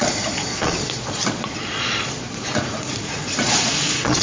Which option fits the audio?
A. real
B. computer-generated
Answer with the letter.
B